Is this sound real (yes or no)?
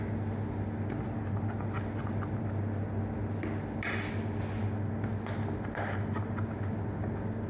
yes